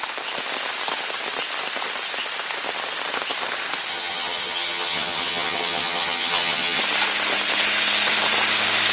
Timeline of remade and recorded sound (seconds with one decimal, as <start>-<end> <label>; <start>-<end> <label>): 0.0-3.9 recorded; 3.9-6.8 remade; 6.8-8.9 recorded